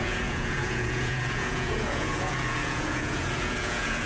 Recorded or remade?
remade